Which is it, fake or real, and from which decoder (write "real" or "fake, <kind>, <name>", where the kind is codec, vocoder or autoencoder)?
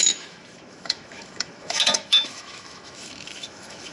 fake, autoencoder, DAC-VAE